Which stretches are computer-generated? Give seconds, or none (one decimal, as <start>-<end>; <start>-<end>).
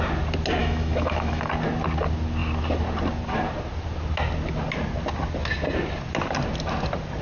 0.6-1.5